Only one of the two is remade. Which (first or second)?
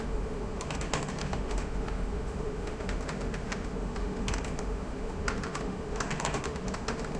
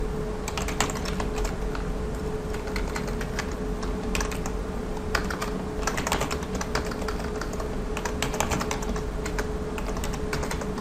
first